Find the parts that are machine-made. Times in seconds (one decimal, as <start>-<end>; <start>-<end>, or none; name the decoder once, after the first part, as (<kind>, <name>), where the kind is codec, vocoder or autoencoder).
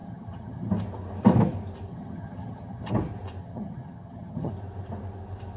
0.0-0.7 (vocoder, HiFi-GAN); 1.9-2.9; 3.4-4.5